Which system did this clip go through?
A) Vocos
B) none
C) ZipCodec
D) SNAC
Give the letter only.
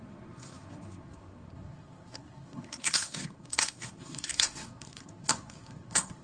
D